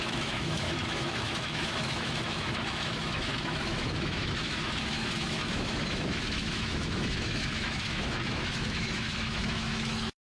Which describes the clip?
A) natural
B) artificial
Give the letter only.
B